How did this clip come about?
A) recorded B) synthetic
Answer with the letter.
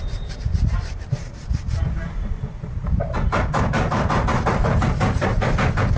B